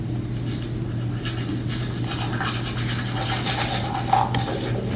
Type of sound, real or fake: real